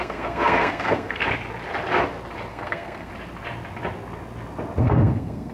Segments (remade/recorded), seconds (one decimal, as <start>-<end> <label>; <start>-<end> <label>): 0.0-1.2 remade; 1.2-2.5 recorded; 2.5-3.1 remade; 3.1-4.8 recorded; 4.8-5.5 remade